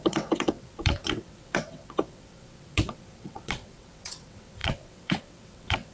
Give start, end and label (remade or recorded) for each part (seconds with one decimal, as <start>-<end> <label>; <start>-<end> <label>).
0.0-5.9 remade